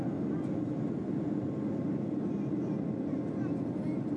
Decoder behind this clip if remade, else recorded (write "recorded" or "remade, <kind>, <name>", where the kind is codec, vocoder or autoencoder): recorded